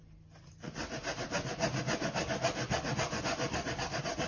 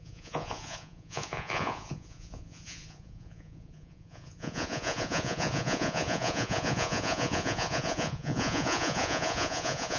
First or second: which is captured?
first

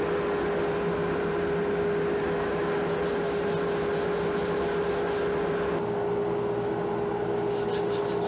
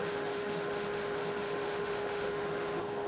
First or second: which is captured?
first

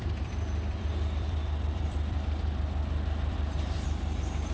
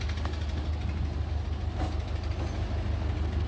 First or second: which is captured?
second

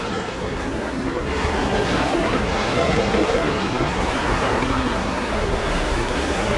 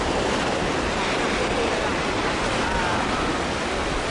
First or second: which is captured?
second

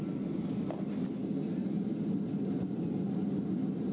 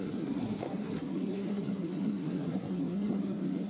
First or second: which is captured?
first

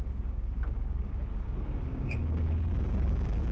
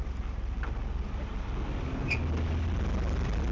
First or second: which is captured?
second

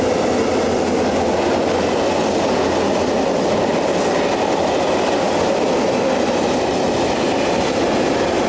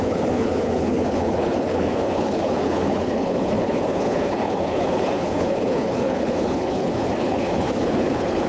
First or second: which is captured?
first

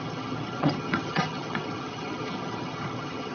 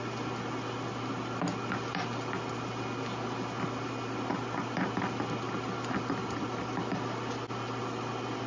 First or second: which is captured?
second